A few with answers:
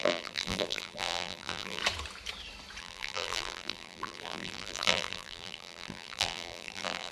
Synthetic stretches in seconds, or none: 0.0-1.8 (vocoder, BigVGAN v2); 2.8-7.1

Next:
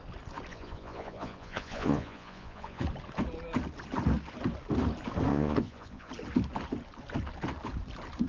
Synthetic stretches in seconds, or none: 0.5-2.8 (vocoder, Vocos); 5.3-6.1

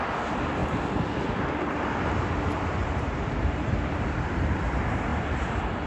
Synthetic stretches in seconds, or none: 2.8-3.7 (vocoder, BigVGAN v2)

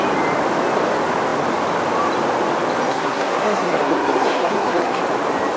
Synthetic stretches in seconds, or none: 2.9-5.0 (codec, SNAC)

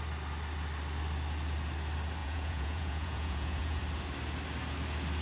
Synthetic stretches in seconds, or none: 2.2-3.8 (vocoder, Vocos)